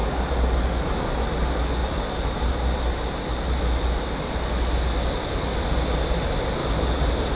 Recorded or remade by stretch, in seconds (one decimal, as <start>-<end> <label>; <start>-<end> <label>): 0.0-0.9 remade; 0.9-1.8 recorded; 1.8-3.6 remade; 3.6-6.6 recorded; 6.6-7.4 remade

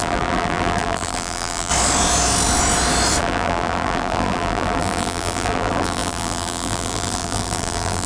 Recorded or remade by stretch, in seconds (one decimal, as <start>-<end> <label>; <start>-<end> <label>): 0.0-1.7 remade; 1.7-3.2 recorded; 3.2-8.1 remade

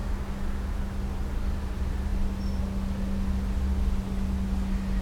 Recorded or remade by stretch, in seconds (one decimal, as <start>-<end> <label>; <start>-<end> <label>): 0.0-5.0 recorded

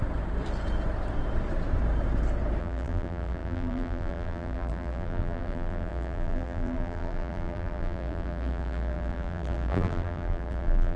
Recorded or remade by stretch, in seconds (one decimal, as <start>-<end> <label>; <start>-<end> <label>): 0.0-2.6 recorded; 2.6-11.0 remade